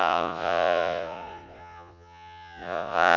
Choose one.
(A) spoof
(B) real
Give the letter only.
A